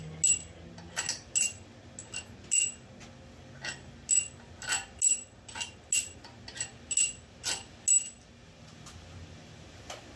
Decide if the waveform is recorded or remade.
recorded